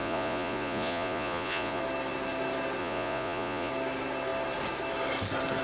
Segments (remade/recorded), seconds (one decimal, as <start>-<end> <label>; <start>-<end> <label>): 0.0-1.8 remade; 1.8-2.8 recorded; 2.8-3.7 remade; 3.7-5.6 recorded